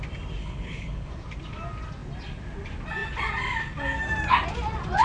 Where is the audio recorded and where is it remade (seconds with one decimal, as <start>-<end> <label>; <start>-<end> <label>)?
0.0-0.4 recorded; 0.4-1.1 remade; 1.1-5.0 recorded